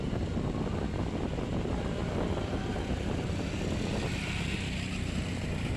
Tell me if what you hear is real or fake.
real